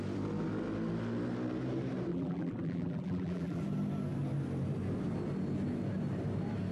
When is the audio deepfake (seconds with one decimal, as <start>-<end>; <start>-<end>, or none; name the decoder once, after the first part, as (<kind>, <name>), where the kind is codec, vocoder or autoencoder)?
2.1-3.6 (vocoder, BigVGAN v2)